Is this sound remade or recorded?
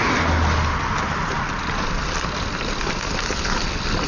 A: recorded